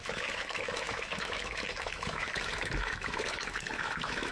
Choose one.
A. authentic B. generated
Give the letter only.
B